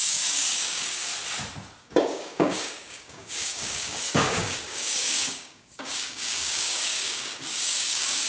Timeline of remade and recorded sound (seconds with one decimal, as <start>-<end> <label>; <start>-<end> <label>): 0.0-1.1 remade; 1.1-1.8 recorded; 1.8-8.3 remade